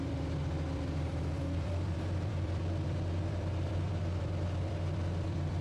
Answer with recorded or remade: remade